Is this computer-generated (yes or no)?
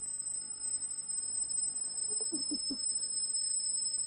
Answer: yes